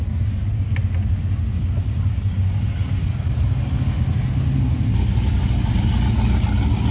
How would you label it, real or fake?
real